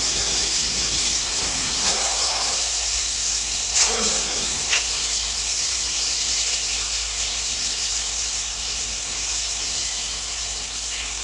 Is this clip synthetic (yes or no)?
yes